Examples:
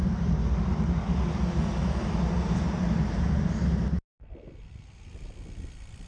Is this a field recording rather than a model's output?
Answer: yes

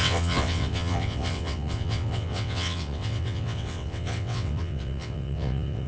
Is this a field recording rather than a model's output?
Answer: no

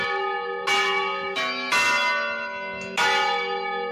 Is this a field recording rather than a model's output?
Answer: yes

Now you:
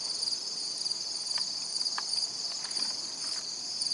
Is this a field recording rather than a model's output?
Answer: yes